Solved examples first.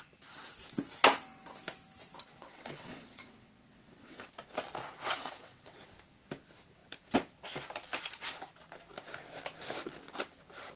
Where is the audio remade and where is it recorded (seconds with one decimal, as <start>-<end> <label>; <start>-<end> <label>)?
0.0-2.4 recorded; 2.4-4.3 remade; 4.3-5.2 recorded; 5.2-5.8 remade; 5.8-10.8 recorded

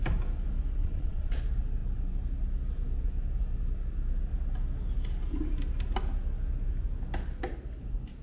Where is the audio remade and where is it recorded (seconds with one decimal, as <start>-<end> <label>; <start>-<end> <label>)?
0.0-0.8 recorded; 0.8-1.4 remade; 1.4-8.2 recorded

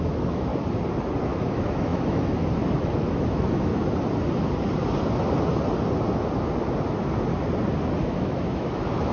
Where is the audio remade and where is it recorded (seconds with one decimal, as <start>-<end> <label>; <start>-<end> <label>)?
0.0-0.5 remade; 0.5-1.2 recorded; 1.2-3.7 remade; 3.7-8.0 recorded; 8.0-9.1 remade